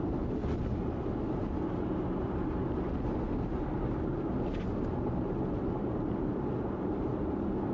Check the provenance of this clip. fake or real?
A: real